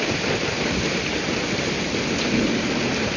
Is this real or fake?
real